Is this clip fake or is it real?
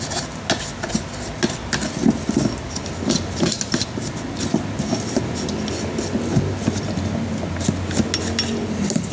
real